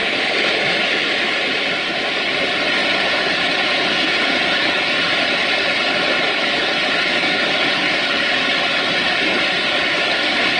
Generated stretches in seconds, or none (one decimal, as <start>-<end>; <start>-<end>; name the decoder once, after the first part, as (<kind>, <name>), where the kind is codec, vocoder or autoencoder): 2.8-4.4 (vocoder, Vocos)